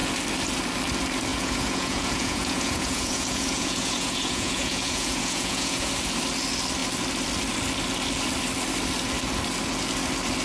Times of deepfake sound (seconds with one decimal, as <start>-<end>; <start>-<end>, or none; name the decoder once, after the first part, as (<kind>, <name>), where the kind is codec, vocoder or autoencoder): 1.3-5.9 (vocoder, Vocos)